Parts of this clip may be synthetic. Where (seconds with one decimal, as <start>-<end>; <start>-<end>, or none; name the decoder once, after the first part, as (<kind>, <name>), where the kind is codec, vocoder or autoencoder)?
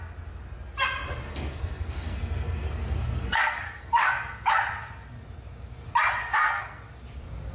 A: 1.3-4.1 (codec, SNAC); 6.2-6.8